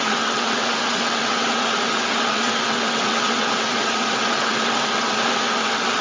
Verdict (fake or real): fake